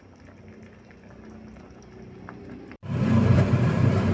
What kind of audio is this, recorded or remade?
remade